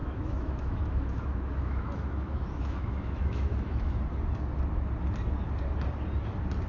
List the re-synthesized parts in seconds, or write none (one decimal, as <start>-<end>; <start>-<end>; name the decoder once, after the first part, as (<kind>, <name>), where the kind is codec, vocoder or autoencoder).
0.0-4.0 (autoencoder, DAC-VAE)